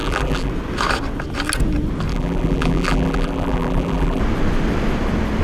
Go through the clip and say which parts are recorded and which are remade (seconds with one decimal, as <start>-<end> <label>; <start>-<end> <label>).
0.0-0.5 remade; 0.5-2.1 recorded; 2.1-4.2 remade; 4.2-5.4 recorded